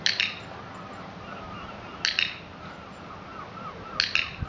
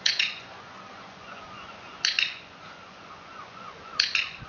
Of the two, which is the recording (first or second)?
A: first